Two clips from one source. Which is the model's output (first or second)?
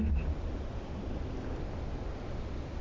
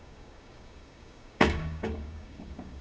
second